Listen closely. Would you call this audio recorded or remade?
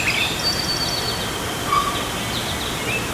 recorded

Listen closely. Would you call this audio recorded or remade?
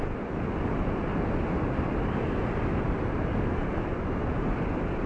recorded